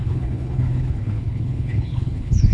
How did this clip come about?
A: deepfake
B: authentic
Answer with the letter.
A